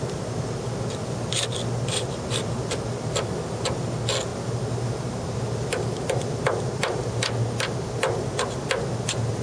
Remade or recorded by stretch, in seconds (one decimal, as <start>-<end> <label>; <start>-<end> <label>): 0.0-9.4 recorded